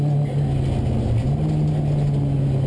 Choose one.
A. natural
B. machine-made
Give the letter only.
A